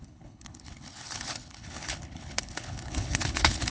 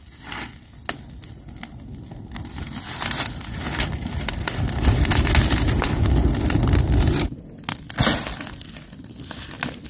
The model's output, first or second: first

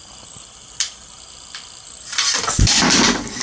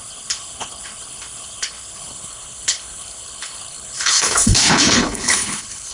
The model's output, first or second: second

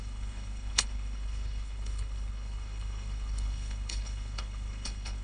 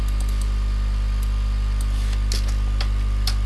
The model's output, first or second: first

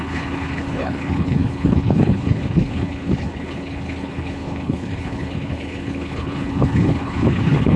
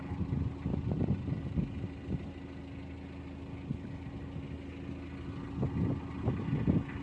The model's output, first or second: first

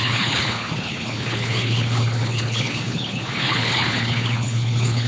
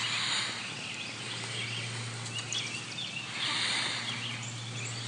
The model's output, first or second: first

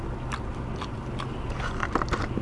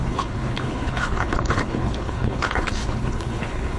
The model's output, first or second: second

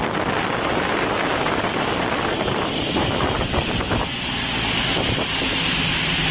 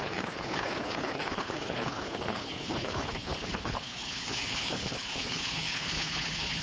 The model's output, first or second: second